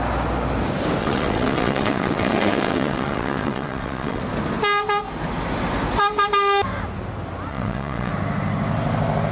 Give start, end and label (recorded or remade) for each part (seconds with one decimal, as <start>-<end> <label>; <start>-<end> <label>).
0.0-1.0 recorded; 1.0-4.2 remade; 4.2-7.5 recorded; 7.5-8.1 remade; 8.1-9.3 recorded